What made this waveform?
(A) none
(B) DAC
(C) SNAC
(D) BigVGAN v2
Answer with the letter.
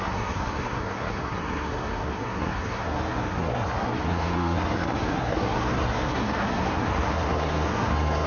C